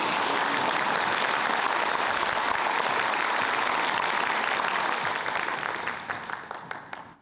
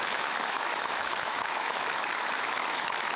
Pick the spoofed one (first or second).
second